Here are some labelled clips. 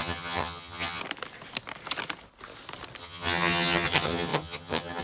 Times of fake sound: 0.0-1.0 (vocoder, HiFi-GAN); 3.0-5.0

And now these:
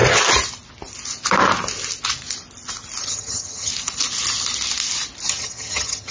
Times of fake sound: 3.0-3.7 (vocoder, HiFi-GAN); 5.3-6.1

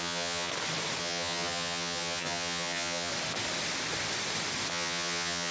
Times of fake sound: 0.0-0.5 (vocoder, HiFi-GAN); 1.0-3.1; 4.7-5.5

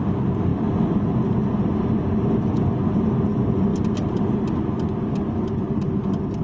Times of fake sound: none

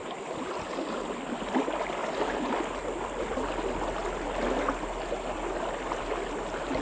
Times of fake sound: none

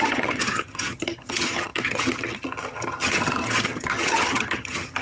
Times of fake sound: 0.0-5.0 (vocoder, HiFi-GAN)